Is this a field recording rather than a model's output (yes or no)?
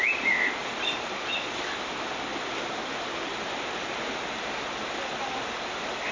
yes